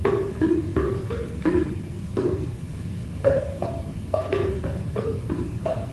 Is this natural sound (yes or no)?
no